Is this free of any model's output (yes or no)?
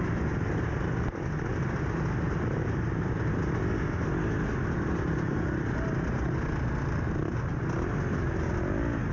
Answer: yes